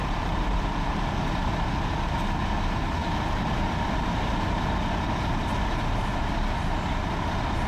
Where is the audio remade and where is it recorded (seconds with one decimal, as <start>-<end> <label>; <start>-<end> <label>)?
0.0-1.3 remade; 1.3-3.0 recorded; 3.0-6.4 remade; 6.4-7.7 recorded